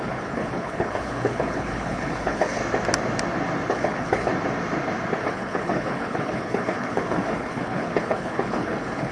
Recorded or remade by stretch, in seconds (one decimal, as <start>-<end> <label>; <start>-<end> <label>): 0.0-2.6 remade; 2.6-3.7 recorded; 3.7-4.3 remade; 4.3-5.2 recorded; 5.2-9.1 remade